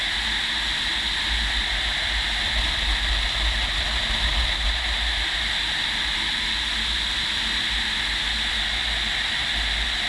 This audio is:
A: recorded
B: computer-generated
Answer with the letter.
A